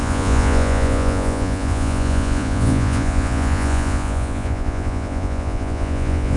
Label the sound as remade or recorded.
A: remade